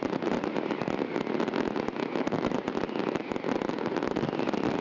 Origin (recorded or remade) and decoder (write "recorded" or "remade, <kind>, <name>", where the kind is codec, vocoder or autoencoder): recorded